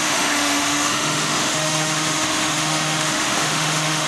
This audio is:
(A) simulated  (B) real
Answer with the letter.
A